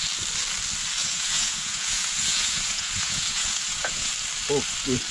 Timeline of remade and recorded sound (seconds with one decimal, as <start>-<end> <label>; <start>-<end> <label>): 0.0-1.0 recorded; 1.0-4.1 remade; 4.1-5.1 recorded